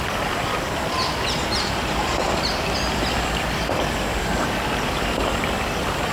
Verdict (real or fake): fake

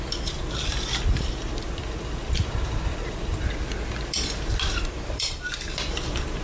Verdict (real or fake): fake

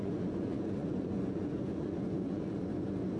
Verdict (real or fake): fake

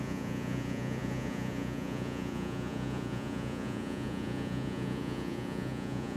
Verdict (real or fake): fake